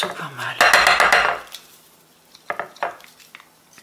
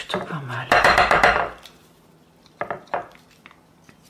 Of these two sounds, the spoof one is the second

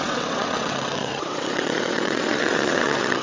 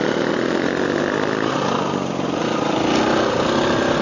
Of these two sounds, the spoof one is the first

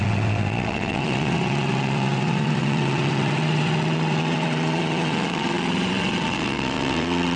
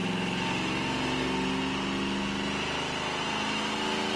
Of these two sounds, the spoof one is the first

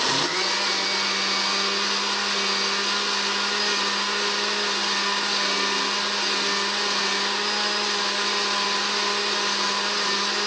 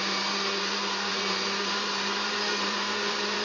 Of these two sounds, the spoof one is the second